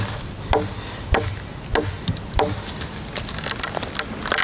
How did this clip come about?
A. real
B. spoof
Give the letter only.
A